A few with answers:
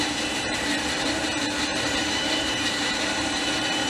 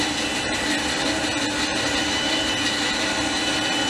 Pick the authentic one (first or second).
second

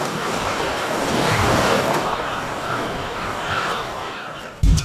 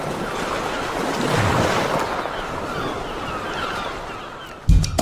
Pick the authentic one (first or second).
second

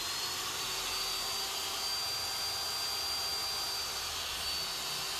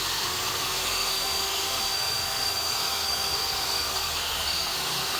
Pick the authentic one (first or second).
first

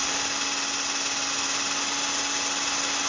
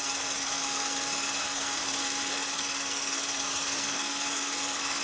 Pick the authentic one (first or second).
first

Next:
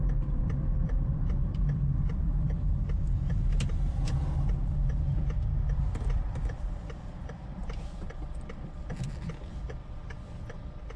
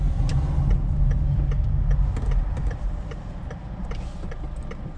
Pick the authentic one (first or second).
second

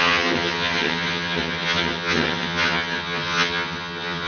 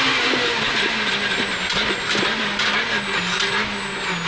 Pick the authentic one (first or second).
second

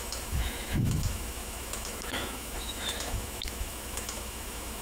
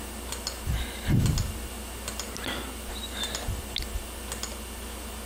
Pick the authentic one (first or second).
second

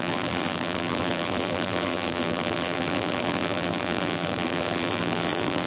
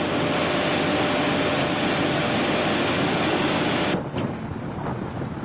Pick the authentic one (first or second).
second